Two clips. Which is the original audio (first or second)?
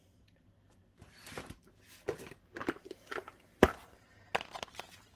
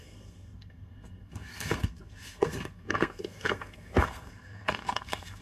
first